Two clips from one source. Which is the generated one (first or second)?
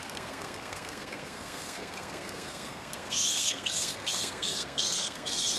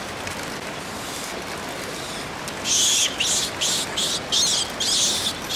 first